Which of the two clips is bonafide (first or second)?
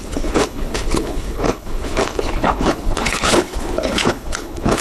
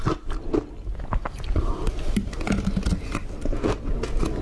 second